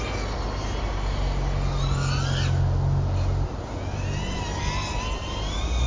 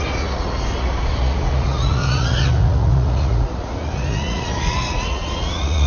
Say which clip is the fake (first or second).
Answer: second